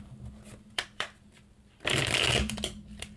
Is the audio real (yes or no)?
no